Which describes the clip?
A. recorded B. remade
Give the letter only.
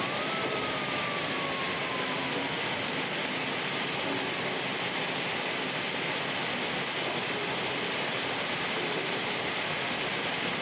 A